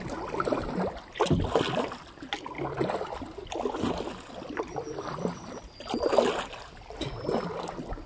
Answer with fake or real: real